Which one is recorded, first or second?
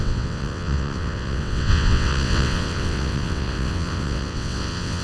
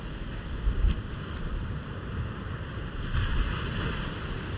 second